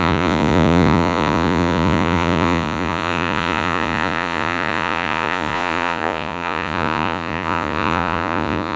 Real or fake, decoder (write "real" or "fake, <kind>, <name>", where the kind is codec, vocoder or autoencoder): fake, vocoder, Vocos